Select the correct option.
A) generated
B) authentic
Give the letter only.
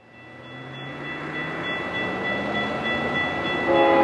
B